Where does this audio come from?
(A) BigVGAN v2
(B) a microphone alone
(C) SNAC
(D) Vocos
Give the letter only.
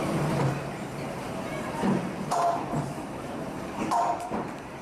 A